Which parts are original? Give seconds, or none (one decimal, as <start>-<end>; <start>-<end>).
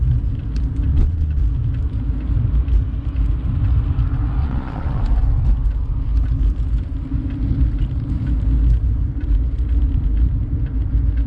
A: 0.0-0.9; 1.4-4.4; 5.0-11.3